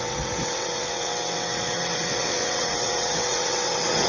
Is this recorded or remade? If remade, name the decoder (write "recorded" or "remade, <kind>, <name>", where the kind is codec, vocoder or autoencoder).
remade, vocoder, WaveNeXt